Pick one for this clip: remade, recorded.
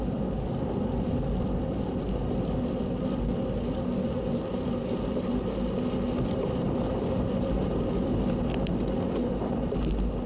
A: recorded